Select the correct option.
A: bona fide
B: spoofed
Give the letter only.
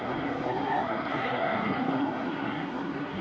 B